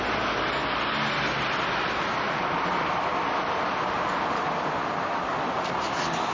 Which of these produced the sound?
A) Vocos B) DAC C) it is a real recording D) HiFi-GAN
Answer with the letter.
C